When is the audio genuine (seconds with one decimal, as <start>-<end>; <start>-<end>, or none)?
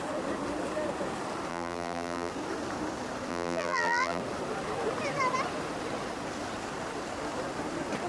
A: 0.0-1.5; 2.3-3.3; 4.2-8.1